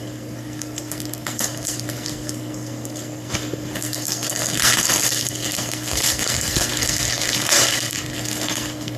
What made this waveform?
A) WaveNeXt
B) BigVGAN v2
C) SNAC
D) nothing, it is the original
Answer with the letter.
C